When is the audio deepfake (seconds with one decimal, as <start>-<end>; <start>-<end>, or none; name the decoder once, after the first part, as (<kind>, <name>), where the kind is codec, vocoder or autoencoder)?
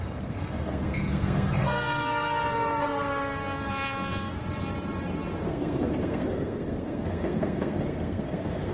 0.0-4.4 (codec, SNAC); 5.4-8.7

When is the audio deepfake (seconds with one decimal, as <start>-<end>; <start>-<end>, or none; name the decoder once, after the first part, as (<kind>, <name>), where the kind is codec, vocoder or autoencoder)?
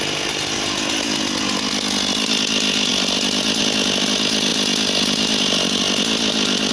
none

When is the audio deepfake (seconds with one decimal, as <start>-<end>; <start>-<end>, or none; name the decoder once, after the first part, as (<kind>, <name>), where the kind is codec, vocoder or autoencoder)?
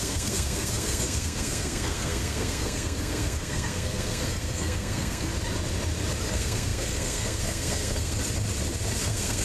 0.0-5.3 (codec, SNAC); 6.3-8.2; 9.0-9.4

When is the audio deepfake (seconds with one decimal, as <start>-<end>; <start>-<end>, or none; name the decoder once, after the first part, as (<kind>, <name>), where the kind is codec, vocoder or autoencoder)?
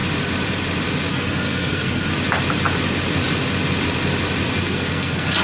1.1-2.1 (codec, SNAC); 4.6-5.4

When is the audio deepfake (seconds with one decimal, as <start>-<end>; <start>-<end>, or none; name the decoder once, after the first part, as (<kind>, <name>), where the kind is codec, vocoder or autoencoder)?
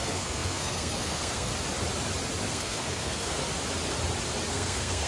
0.0-1.5 (codec, SNAC); 2.5-3.4; 4.5-5.1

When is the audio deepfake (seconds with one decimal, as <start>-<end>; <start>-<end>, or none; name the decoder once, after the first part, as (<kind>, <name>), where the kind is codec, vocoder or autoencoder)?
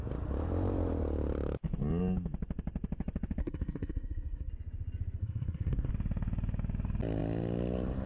3.4-4.5 (codec, SNAC); 5.2-5.9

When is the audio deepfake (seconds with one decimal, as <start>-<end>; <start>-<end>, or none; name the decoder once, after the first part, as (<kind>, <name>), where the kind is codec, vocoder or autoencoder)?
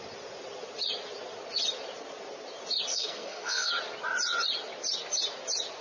2.9-3.7 (codec, SNAC)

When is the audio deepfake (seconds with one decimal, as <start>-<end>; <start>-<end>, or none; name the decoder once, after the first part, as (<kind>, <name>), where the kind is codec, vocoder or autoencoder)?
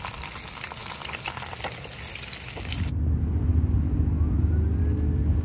none